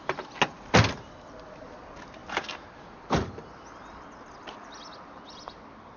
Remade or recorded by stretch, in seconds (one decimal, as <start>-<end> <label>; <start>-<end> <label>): 0.0-6.0 recorded